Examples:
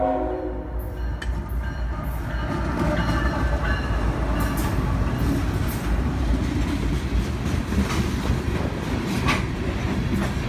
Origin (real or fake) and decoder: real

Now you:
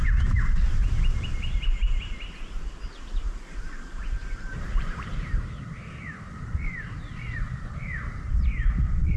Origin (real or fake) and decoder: fake, vocoder, BigVGAN v2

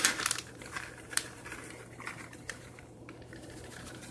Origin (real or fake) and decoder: fake, vocoder, BigVGAN v2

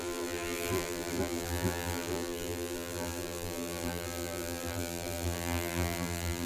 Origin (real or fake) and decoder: fake, vocoder, BigVGAN v2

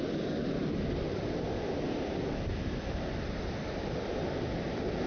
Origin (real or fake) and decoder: real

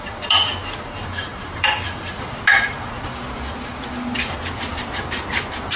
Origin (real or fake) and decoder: fake, vocoder, BigVGAN v2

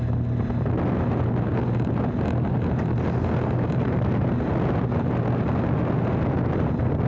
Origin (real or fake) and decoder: real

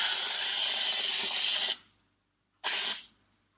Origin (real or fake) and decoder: real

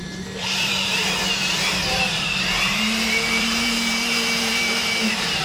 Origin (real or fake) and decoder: fake, vocoder, BigVGAN v2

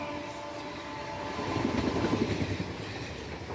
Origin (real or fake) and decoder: real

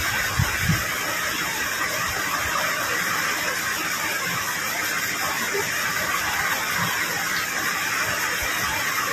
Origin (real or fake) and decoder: real